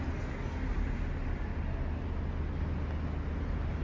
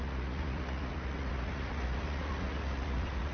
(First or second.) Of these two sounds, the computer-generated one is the second